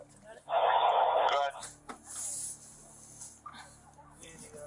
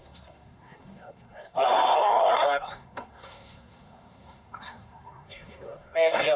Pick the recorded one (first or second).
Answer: first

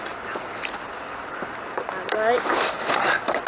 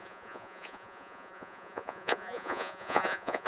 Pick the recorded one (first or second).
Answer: first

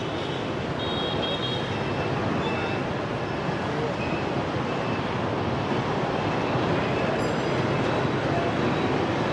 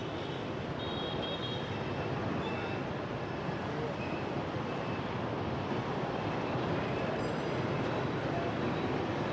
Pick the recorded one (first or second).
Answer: first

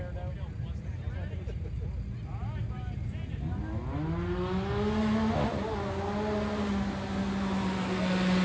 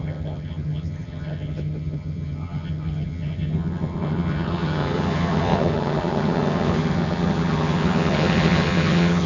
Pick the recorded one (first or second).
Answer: first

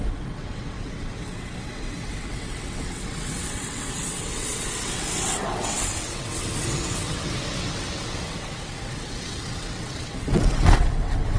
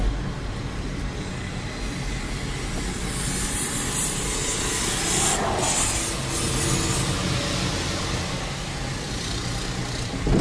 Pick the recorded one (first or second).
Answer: second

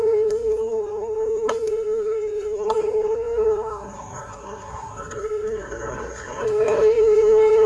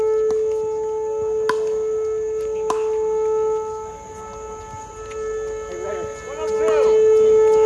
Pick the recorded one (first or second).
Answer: second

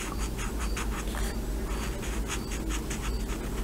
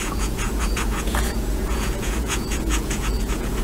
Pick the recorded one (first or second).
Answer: first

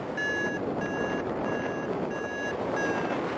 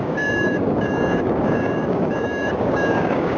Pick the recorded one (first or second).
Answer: first